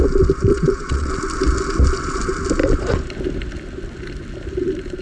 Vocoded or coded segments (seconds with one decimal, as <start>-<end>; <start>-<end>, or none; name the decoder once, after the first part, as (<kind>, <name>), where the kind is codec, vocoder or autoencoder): 0.5-1.1 (vocoder, Vocos)